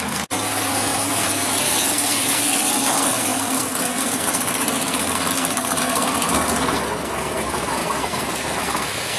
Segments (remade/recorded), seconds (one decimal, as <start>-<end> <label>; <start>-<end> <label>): 0.0-9.2 remade